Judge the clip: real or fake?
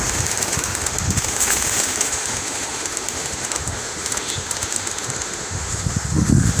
fake